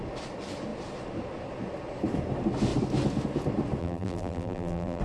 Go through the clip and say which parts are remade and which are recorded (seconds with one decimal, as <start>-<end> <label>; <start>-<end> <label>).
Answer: 0.0-3.8 recorded; 3.8-5.0 remade